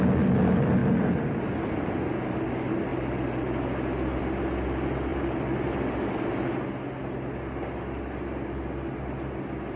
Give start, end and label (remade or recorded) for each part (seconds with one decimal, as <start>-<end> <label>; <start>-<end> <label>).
0.0-5.1 recorded; 5.1-5.9 remade; 5.9-9.8 recorded